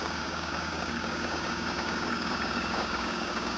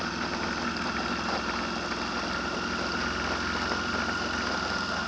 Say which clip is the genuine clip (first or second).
second